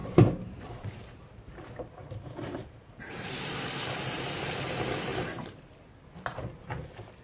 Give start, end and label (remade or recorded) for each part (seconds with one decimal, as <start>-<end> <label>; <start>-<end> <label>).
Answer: 0.0-1.3 remade; 1.3-2.0 recorded; 2.0-3.5 remade; 3.5-5.1 recorded; 5.1-5.6 remade; 5.6-7.2 recorded